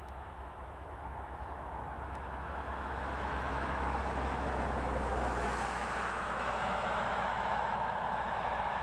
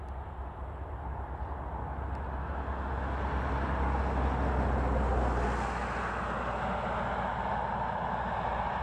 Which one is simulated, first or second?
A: first